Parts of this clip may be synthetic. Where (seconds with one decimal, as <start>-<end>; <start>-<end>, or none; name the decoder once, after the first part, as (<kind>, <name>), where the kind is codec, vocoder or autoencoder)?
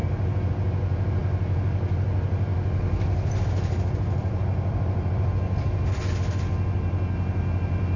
none